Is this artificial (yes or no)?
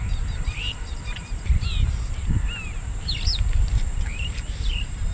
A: yes